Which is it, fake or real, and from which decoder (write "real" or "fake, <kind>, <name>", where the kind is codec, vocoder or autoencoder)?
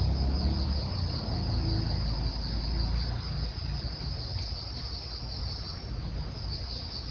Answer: real